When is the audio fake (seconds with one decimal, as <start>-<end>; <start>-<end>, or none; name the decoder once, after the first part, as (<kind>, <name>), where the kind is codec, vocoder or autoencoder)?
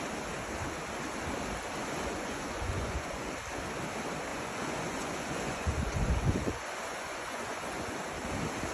1.8-3.3 (vocoder, Vocos); 4.3-8.1